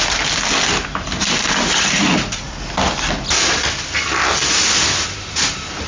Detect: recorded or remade recorded